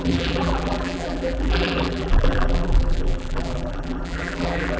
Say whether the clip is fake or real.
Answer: fake